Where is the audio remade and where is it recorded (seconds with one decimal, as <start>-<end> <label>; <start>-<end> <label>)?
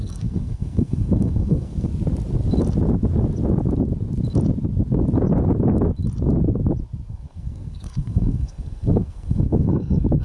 0.0-1.9 remade; 1.9-7.1 recorded; 7.1-10.2 remade